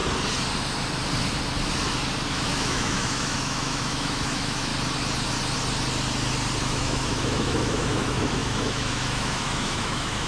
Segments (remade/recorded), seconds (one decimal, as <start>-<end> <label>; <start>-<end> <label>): 0.0-2.3 recorded; 2.3-4.7 remade; 4.7-6.6 recorded; 6.6-10.3 remade